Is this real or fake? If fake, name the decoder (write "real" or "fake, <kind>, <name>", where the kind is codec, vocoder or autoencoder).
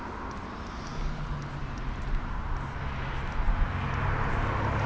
real